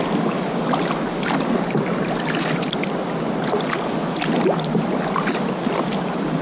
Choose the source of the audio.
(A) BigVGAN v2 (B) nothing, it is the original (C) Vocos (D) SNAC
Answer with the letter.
B